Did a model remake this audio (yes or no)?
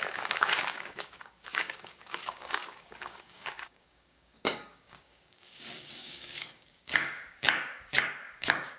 yes